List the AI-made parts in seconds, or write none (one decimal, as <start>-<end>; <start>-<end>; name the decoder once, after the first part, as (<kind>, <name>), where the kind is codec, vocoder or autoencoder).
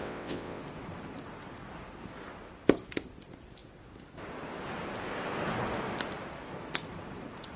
0.0-0.6 (vocoder, WaveNeXt)